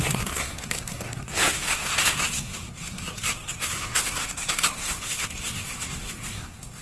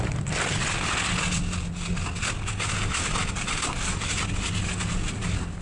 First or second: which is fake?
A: first